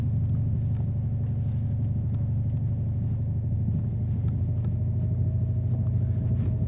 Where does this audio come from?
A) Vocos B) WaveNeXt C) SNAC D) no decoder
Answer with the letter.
D